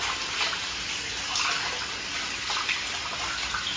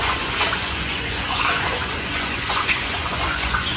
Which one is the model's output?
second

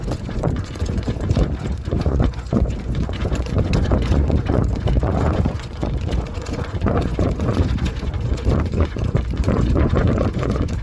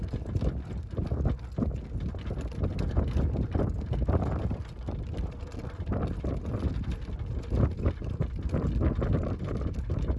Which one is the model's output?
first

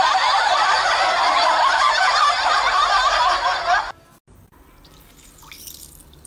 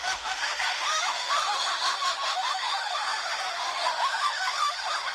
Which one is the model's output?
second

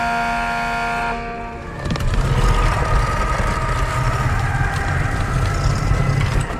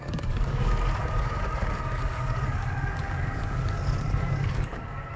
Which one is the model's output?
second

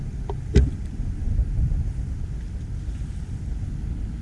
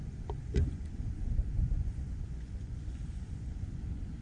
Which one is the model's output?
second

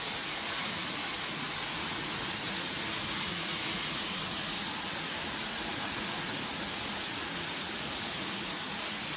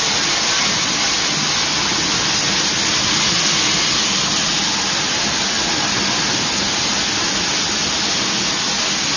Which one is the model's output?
first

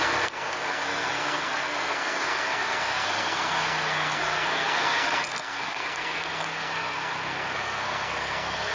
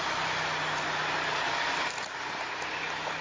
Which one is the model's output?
first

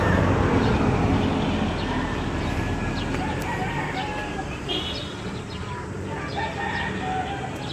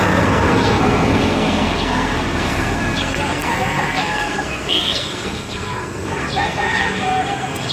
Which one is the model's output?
second